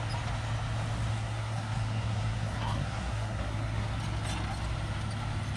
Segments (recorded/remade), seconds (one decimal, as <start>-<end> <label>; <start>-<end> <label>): 0.0-1.1 recorded; 1.1-4.0 remade; 4.0-5.6 recorded